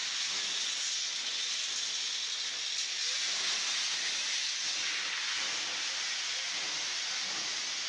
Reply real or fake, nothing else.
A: real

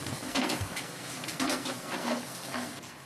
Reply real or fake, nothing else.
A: fake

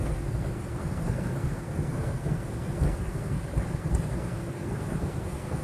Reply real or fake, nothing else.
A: fake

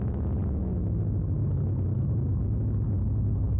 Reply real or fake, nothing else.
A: real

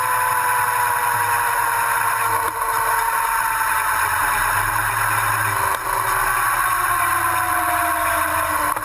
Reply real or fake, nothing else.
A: real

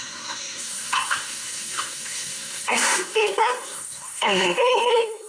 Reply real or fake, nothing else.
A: fake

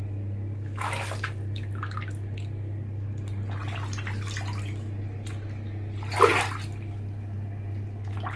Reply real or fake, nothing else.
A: real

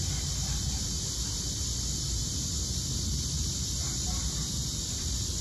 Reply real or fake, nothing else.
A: real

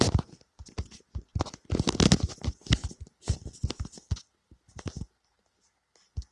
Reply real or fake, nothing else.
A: real